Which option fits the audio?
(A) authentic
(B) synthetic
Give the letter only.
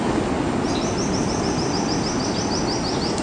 A